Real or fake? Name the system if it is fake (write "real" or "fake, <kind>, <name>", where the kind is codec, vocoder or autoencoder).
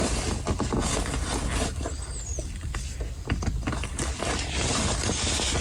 real